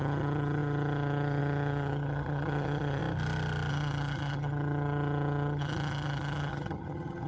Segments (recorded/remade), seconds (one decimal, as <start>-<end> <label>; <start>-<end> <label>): 0.0-3.0 remade; 3.0-3.7 recorded; 3.7-7.3 remade